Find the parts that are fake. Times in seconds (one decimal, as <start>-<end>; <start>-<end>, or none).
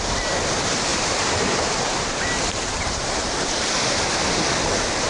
0.9-4.0